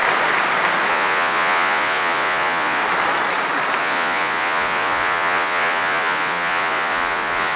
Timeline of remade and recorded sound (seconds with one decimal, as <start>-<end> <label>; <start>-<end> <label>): 0.0-0.9 recorded; 0.9-2.8 remade; 2.8-3.8 recorded; 3.8-7.6 remade